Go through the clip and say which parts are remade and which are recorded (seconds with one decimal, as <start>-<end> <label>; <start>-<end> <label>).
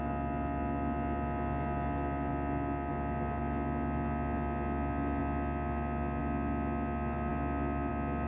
0.0-8.3 recorded